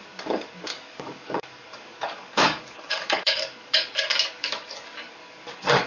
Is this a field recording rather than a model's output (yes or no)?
no